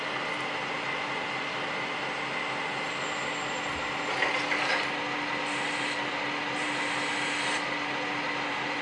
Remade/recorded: recorded